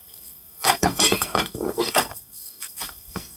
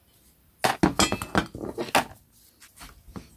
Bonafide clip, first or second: second